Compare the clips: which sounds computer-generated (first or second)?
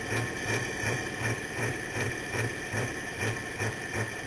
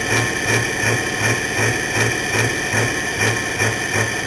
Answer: first